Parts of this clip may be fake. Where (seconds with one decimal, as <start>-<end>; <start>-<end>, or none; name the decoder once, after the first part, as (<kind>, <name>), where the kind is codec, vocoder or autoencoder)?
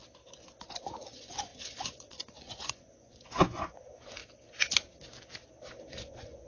1.1-4.2 (vocoder, Vocos); 5.9-6.5